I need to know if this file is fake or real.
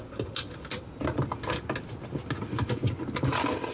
real